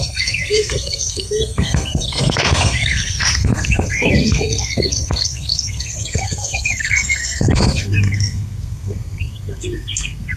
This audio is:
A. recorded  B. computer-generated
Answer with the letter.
B